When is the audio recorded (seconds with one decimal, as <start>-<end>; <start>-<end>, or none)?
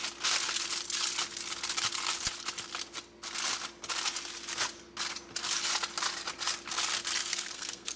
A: 0.0-7.2